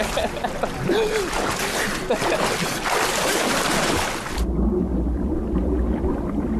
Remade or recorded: recorded